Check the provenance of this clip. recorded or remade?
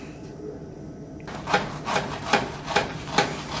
recorded